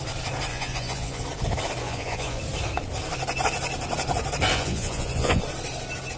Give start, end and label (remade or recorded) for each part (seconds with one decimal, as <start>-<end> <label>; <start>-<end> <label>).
0.0-0.5 recorded; 0.5-1.2 remade; 1.2-1.8 recorded; 1.8-2.4 remade; 2.4-4.5 recorded; 4.5-5.4 remade; 5.4-6.2 recorded